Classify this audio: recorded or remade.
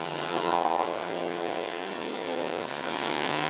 remade